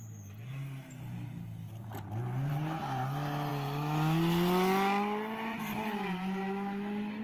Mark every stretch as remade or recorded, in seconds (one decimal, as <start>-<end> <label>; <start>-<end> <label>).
0.0-7.2 recorded